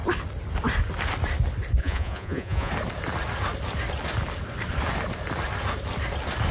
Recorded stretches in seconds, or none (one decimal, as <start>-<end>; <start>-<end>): 0.0-1.8; 2.7-6.5